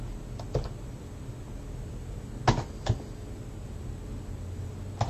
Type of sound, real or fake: real